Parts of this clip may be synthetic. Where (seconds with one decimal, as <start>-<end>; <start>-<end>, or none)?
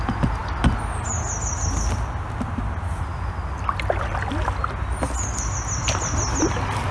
none